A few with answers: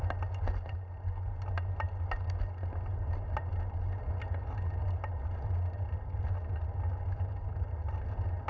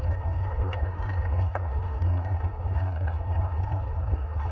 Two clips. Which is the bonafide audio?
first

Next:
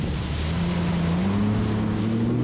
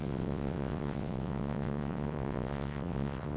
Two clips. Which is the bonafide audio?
first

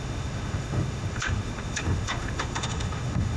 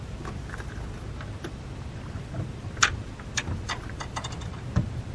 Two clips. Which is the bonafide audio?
second